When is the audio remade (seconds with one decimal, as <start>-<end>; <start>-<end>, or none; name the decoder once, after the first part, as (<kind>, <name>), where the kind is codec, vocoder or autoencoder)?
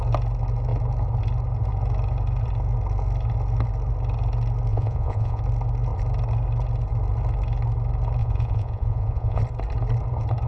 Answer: 4.7-5.4 (vocoder, Vocos); 8.2-9.4